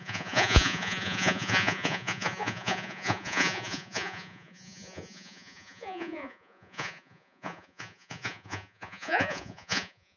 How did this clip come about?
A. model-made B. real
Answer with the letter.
A